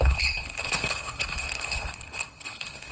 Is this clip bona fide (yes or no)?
no